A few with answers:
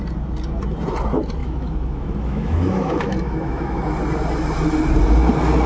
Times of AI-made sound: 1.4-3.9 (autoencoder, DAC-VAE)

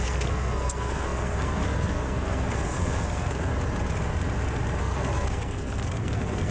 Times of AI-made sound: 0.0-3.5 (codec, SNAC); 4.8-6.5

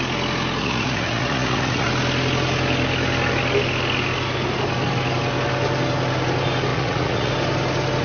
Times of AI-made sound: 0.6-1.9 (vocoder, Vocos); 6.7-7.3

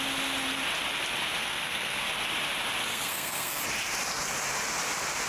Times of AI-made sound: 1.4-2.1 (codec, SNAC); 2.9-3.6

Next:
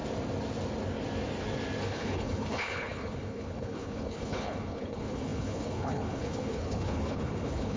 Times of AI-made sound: 1.8-7.8 (codec, HILCodec)

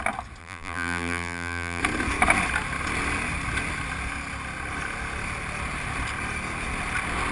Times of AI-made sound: 0.4-1.8 (vocoder, BigVGAN v2)